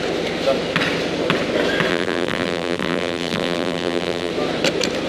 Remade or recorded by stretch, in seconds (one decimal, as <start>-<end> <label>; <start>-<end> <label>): 0.0-1.9 recorded; 1.9-4.3 remade; 4.3-5.1 recorded